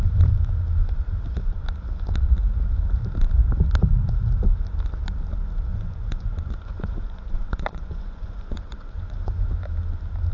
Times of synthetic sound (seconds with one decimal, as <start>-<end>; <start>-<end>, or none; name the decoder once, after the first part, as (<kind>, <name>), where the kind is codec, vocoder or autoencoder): 5.7-9.7 (vocoder, Vocos)